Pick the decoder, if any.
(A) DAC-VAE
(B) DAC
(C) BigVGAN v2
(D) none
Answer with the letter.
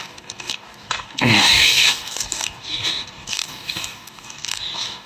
B